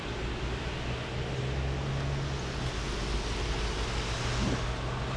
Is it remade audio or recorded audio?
recorded